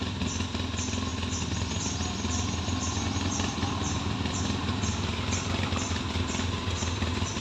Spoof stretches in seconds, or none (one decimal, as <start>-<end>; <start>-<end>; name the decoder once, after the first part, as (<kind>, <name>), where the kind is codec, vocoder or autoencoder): none